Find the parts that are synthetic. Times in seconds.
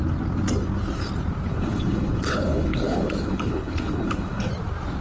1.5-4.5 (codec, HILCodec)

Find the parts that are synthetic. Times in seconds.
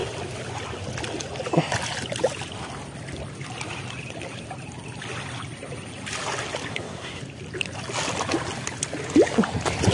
6.7-7.2 (codec, SNAC)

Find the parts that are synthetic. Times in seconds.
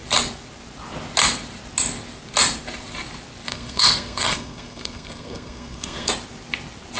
3.5-6.1 (codec, SNAC)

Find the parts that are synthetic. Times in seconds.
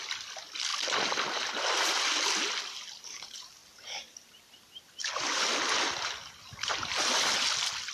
none